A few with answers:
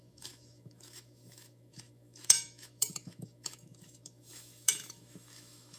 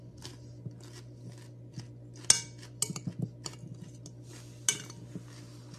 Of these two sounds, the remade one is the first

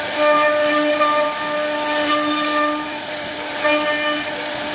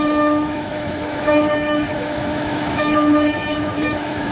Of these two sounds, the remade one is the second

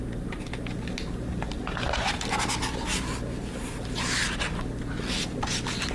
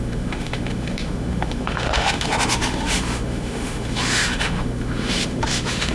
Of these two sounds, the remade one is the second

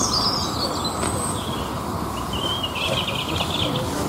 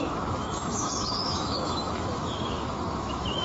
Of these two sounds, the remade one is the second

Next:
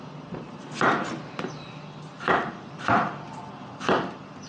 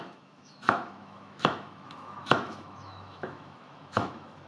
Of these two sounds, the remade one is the second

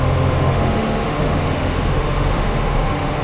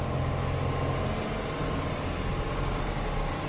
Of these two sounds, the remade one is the first